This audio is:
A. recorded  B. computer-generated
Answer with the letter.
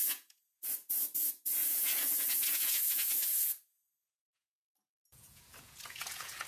B